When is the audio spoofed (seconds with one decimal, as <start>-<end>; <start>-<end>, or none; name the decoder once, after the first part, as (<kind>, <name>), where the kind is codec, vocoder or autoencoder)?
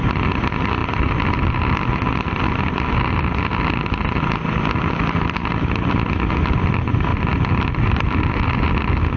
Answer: 7.1-8.5 (vocoder, BigVGAN v2)